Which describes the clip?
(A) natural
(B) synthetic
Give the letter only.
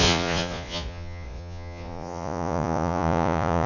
B